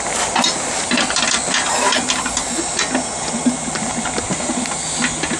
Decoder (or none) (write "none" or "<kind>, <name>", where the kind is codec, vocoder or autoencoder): none